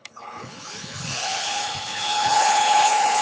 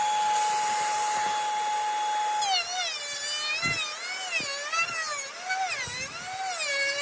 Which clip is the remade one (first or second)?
first